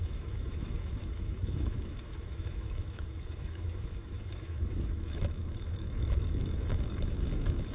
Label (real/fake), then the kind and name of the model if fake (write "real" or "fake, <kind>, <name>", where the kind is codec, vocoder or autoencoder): fake, autoencoder, DAC-VAE